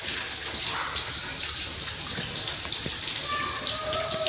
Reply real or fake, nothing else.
real